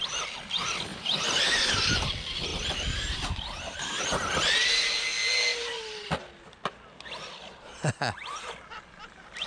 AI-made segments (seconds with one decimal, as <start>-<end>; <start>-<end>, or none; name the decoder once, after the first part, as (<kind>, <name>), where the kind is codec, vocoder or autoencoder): 0.9-1.8 (vocoder, BigVGAN v2); 2.5-4.0; 5.5-6.1